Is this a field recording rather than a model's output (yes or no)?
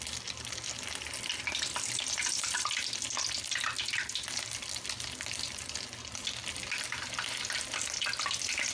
yes